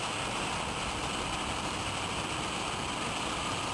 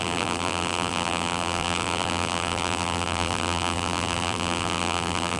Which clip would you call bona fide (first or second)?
first